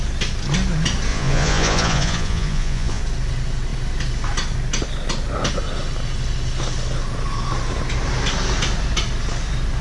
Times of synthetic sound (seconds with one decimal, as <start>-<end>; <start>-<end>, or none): 1.1-3.0

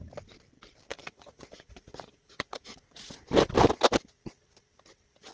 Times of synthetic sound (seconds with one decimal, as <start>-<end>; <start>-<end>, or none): 0.9-3.2

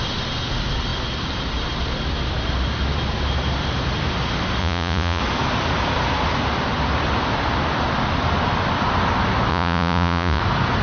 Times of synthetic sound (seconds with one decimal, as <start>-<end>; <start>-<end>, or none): 4.6-5.2; 9.5-10.4